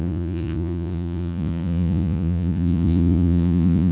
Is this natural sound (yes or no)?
no